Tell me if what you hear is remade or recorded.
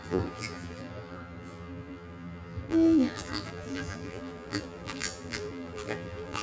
remade